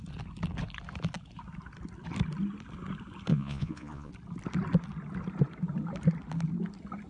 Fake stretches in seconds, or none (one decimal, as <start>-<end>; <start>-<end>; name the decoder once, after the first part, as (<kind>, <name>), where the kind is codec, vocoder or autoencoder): 3.3-4.1 (vocoder, Vocos)